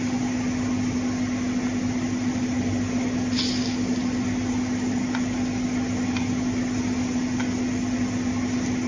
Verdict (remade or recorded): recorded